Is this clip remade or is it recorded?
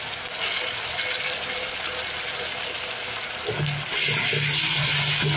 recorded